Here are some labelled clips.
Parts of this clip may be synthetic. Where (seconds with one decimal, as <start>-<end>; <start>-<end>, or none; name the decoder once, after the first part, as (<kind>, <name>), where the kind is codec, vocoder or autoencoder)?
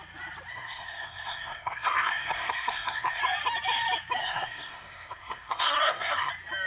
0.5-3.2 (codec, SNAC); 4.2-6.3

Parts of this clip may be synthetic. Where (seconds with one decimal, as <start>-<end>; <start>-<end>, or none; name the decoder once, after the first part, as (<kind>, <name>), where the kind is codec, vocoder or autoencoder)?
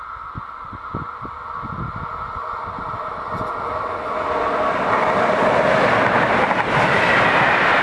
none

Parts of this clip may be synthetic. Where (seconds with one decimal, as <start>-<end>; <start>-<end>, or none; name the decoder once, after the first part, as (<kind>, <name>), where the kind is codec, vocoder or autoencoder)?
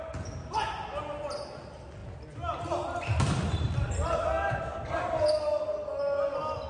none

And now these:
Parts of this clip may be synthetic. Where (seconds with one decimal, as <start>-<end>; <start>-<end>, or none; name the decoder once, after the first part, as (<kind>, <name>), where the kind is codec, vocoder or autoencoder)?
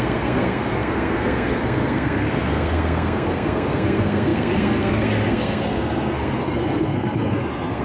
0.0-7.8 (codec, SNAC)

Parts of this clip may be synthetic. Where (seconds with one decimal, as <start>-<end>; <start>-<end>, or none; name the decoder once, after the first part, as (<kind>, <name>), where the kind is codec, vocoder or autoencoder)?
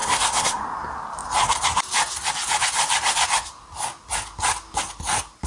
0.0-0.6 (codec, SNAC)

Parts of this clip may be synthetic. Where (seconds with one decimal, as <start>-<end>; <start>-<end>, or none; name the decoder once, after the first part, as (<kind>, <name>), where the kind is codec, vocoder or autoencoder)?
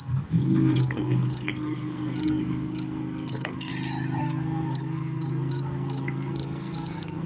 0.0-3.7 (codec, SNAC); 4.2-7.3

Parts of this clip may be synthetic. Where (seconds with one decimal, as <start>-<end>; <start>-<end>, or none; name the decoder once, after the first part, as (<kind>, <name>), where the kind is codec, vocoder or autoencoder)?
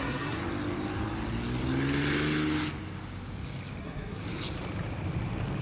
0.0-0.4 (codec, SNAC); 3.8-4.2